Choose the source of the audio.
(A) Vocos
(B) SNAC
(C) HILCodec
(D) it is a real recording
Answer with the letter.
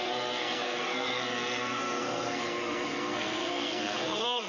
B